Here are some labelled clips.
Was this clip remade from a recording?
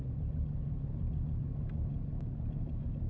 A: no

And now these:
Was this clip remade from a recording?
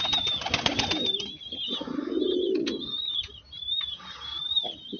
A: no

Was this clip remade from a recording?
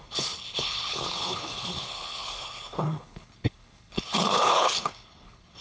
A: yes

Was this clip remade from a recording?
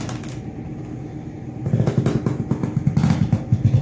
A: no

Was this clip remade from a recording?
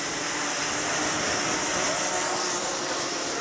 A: yes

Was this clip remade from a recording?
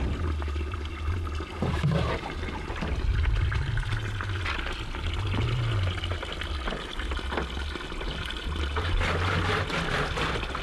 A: no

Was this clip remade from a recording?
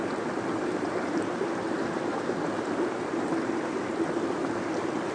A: no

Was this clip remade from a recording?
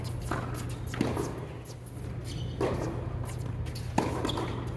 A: no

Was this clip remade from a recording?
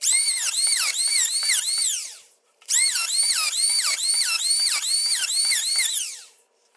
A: yes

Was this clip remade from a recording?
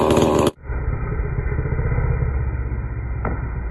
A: no